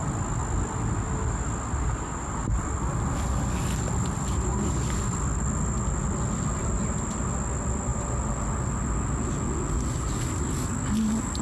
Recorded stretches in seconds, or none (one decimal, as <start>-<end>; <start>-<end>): 0.0-11.4